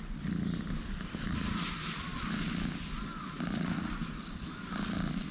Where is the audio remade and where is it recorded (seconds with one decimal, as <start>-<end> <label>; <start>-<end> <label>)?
0.0-5.3 recorded